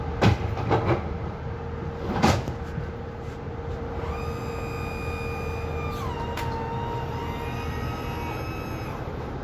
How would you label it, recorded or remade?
recorded